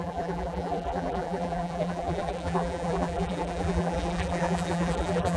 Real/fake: fake